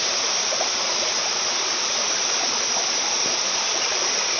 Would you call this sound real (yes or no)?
yes